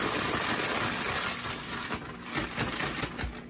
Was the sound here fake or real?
real